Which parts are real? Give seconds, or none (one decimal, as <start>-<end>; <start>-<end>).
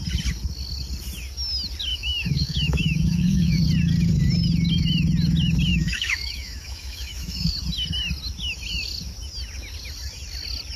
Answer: 0.0-1.9; 3.6-5.7; 7.5-10.8